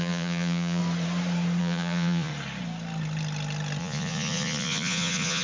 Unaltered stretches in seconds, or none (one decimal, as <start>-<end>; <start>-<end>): 0.8-1.6; 2.3-3.8